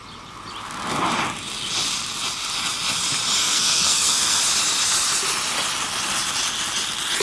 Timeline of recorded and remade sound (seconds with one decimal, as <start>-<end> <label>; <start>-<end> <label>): 0.0-3.4 recorded; 3.4-4.4 remade; 4.4-7.2 recorded